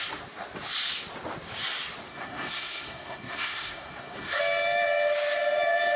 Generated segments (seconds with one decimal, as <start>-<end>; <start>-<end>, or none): 2.1-4.4